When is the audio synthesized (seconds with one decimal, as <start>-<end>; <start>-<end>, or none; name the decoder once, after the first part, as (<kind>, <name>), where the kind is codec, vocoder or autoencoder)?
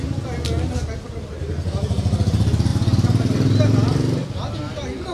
none